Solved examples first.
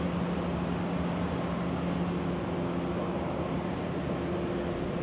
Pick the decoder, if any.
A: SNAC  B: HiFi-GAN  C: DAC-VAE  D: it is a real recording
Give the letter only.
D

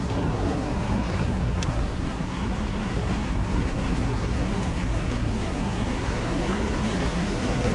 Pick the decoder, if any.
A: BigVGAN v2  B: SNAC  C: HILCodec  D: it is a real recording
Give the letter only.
B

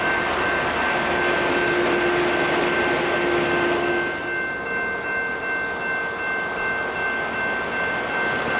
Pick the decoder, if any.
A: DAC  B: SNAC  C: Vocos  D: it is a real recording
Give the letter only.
D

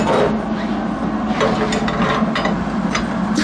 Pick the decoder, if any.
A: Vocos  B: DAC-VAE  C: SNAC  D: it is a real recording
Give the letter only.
D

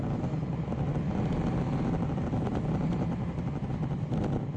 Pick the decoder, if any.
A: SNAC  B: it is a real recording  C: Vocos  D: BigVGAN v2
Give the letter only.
B